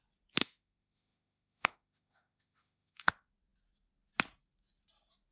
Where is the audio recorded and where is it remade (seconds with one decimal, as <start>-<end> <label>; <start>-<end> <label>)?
0.0-0.4 recorded; 0.4-3.1 remade; 3.1-5.3 recorded